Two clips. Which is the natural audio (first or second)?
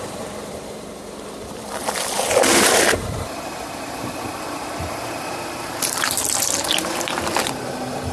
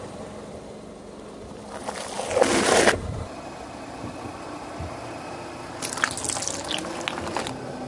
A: second